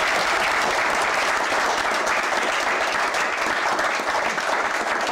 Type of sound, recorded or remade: recorded